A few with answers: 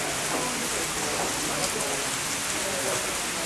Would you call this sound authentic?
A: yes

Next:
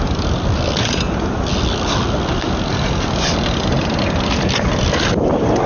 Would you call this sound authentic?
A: yes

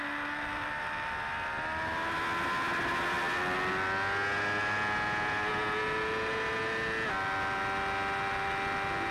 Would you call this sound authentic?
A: yes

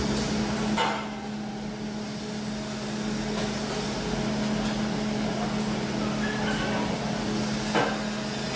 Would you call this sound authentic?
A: yes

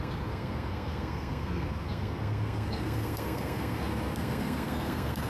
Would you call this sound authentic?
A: no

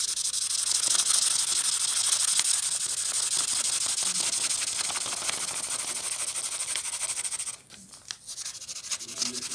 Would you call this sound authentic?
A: yes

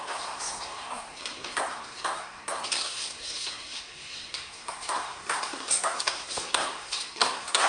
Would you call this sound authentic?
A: no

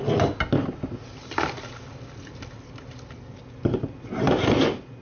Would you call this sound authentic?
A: yes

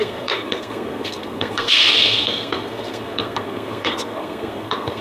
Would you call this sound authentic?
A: no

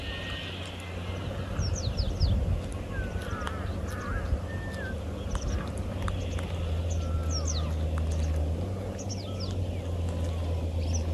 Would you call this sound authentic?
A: yes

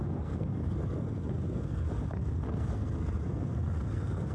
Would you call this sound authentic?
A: no